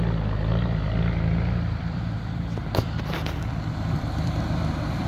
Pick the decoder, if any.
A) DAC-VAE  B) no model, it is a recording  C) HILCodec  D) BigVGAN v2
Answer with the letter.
D